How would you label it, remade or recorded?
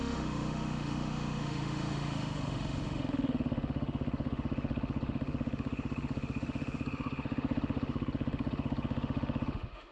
remade